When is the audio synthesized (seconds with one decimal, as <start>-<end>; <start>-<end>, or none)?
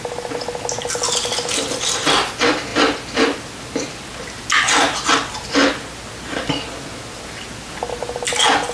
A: none